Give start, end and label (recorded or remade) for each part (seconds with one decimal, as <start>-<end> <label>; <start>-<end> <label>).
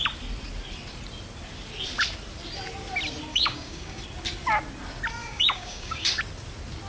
0.0-3.3 recorded; 3.3-4.0 remade; 4.0-5.2 recorded; 5.2-6.2 remade; 6.2-6.9 recorded